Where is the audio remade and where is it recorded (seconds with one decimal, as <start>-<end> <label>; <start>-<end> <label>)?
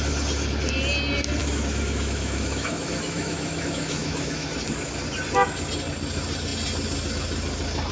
0.0-1.4 recorded; 1.4-4.5 remade; 4.5-7.9 recorded